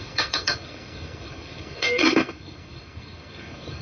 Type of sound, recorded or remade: remade